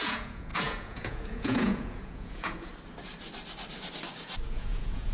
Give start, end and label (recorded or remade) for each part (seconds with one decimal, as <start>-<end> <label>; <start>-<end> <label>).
0.0-2.7 remade; 2.7-4.5 recorded; 4.5-5.1 remade